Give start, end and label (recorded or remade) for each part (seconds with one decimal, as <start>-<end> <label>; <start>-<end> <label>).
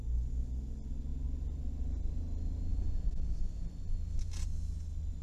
0.0-5.2 recorded